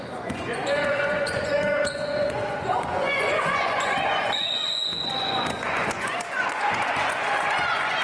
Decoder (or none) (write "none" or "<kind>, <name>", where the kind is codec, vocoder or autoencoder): vocoder, Vocos